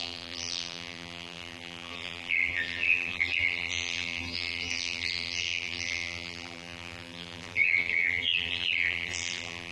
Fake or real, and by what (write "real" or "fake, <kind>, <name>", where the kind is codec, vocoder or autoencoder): fake, vocoder, BigVGAN v2